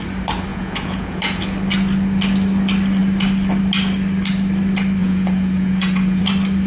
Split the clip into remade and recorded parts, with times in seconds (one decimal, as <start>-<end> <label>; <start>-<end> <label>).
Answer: 0.0-0.5 recorded; 0.5-1.4 remade; 1.4-5.0 recorded; 5.0-6.2 remade; 6.2-6.7 recorded

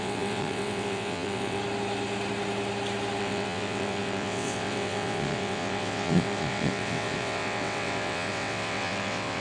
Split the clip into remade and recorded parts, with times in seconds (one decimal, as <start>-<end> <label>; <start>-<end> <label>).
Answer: 0.0-1.6 remade; 1.6-3.2 recorded; 3.2-9.4 remade

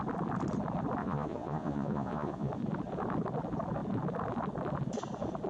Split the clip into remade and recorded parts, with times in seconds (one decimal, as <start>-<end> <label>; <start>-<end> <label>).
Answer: 0.0-1.0 recorded; 1.0-2.5 remade; 2.5-5.5 recorded

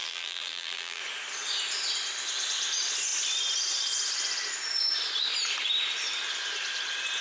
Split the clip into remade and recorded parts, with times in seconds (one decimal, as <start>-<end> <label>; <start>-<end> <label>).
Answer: 0.0-1.0 remade; 1.0-7.2 recorded

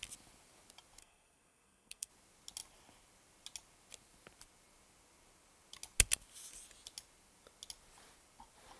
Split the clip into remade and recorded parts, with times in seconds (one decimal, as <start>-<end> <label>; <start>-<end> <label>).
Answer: 0.0-1.0 recorded; 1.0-2.1 remade; 2.1-8.8 recorded

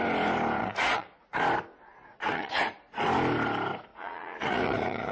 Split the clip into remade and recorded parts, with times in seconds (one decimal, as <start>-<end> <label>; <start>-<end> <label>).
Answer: 0.0-0.6 recorded; 0.6-1.4 remade; 1.4-2.1 recorded; 2.1-2.6 remade; 2.6-3.9 recorded; 3.9-5.1 remade

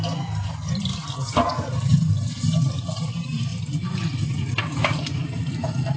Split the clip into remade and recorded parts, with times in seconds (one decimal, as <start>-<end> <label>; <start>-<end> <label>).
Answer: 0.0-0.9 recorded; 0.9-2.3 remade; 2.3-3.5 recorded; 3.5-6.0 remade

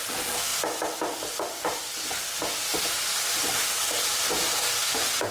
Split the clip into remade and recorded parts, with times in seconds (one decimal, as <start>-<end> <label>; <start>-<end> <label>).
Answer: 0.0-5.3 recorded